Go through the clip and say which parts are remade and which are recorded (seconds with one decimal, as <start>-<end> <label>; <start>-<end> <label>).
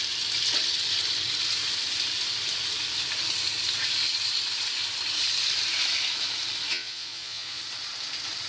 0.0-6.7 recorded; 6.7-7.6 remade; 7.6-8.5 recorded